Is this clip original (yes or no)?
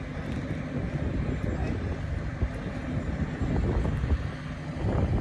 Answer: yes